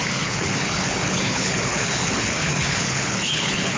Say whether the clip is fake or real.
fake